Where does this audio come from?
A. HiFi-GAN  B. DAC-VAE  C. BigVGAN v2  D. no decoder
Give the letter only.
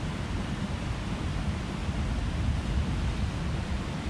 D